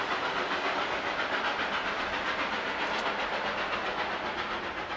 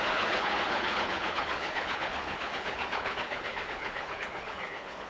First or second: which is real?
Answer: first